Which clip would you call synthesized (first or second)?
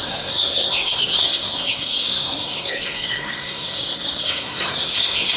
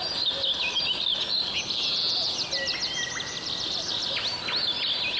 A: first